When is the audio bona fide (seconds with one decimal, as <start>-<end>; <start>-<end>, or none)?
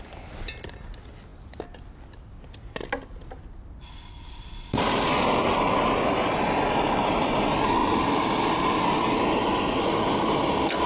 0.0-10.9